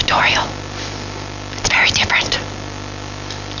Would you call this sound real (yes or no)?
yes